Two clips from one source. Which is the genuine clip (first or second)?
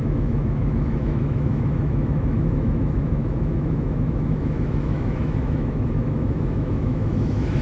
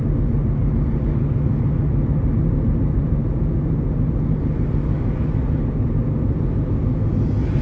second